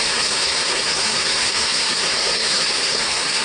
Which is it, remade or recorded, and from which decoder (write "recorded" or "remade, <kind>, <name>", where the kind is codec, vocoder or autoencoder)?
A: remade, codec, SNAC